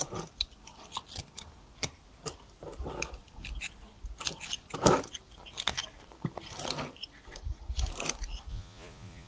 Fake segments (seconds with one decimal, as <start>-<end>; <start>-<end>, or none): 8.5-9.3